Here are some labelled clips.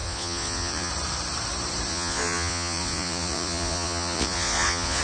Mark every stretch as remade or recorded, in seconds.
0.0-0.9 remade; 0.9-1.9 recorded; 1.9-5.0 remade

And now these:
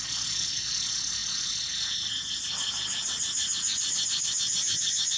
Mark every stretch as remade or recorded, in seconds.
0.0-5.2 recorded